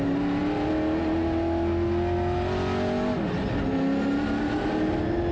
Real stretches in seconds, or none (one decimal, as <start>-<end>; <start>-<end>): 0.0-5.3